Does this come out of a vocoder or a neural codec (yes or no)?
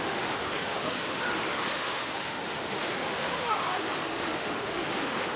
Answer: yes